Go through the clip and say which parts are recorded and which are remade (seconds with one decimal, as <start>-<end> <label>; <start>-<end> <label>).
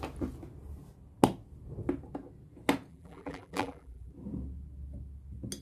0.0-2.9 recorded; 2.9-4.1 remade; 4.1-5.6 recorded